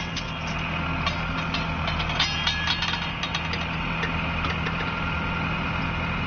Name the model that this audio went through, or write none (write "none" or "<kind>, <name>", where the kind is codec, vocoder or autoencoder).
none